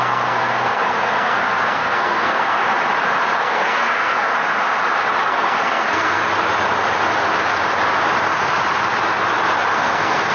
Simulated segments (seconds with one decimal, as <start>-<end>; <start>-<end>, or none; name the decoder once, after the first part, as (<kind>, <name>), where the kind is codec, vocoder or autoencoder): 0.0-2.6 (codec, SNAC); 3.4-4.3; 5.2-6.2; 9.7-10.3